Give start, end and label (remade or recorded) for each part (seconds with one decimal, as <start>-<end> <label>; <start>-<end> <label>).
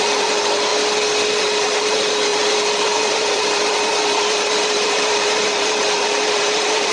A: 0.0-0.7 remade; 0.7-1.4 recorded; 1.4-6.9 remade